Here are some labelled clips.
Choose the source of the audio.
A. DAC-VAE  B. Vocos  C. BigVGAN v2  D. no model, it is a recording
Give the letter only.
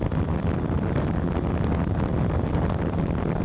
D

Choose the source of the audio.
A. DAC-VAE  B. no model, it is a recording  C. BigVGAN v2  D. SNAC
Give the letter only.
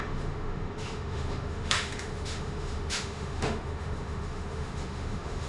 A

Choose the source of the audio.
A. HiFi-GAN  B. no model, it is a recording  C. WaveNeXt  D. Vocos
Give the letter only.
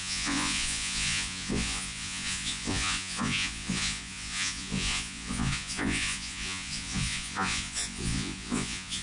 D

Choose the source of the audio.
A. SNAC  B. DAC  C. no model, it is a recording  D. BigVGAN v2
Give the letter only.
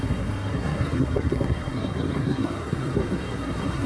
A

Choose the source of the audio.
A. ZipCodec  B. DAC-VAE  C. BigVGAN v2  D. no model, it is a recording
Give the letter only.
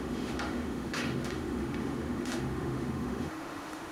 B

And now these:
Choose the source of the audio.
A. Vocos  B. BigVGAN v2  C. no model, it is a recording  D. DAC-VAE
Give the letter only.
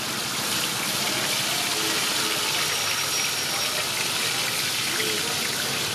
C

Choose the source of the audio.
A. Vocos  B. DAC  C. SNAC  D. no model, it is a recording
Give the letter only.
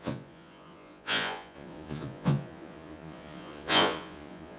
A